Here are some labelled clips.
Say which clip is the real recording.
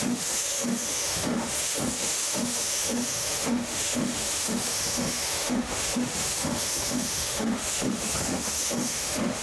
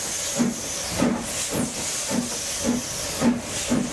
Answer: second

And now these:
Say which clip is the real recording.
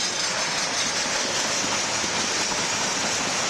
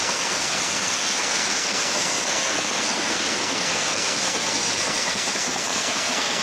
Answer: first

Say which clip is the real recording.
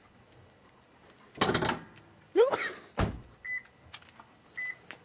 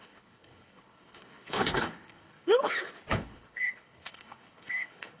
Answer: first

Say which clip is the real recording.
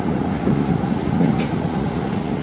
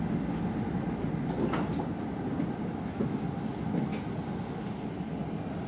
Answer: second